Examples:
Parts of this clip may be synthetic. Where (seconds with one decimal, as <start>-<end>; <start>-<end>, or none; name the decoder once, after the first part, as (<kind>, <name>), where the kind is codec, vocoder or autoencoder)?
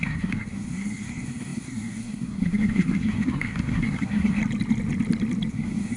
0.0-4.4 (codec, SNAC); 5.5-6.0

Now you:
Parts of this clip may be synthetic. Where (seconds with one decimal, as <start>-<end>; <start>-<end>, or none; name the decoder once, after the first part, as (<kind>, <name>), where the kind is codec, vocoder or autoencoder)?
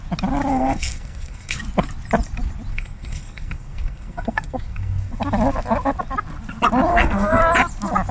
0.5-1.6 (codec, SNAC); 2.7-5.2; 6.9-7.4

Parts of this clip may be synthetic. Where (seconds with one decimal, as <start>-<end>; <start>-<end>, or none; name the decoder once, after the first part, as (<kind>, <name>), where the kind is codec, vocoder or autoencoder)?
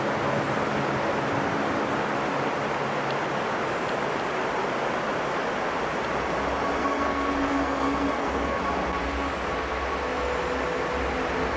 6.8-8.6 (codec, SNAC)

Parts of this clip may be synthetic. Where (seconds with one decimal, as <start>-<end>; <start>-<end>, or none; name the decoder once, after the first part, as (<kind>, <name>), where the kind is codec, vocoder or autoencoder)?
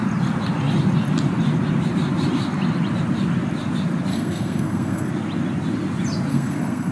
4.1-5.1 (codec, SNAC); 6.3-6.9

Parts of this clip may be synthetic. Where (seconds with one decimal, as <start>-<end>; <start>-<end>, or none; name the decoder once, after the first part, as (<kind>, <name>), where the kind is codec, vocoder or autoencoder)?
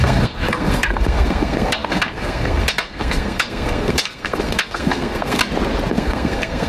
0.0-5.4 (codec, SNAC); 5.9-6.7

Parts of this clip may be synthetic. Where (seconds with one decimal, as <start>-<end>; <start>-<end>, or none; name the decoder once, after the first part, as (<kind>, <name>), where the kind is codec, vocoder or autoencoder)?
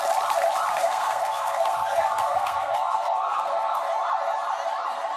0.7-3.8 (codec, SNAC)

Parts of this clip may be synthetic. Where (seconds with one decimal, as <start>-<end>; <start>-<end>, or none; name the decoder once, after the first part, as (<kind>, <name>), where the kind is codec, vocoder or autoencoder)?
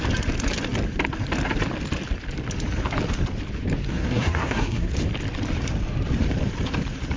3.9-4.9 (codec, SNAC)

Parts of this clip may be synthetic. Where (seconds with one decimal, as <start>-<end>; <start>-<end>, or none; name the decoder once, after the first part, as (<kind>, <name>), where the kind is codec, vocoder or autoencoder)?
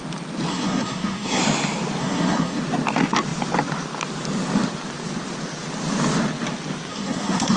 0.5-1.4 (codec, SNAC); 2.0-2.6; 6.9-7.6